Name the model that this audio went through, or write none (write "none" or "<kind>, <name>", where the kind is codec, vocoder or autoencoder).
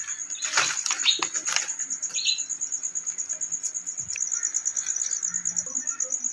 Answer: none